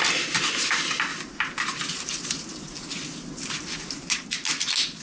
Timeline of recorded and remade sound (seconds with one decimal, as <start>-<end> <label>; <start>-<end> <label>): 0.0-5.0 recorded